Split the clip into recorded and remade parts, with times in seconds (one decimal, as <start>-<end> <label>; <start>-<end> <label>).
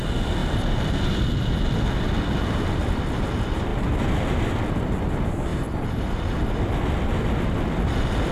0.0-0.4 recorded; 0.4-1.3 remade; 1.3-5.5 recorded; 5.5-6.9 remade; 6.9-8.3 recorded